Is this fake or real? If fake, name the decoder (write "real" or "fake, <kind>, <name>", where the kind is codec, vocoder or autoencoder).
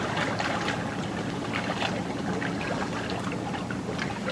real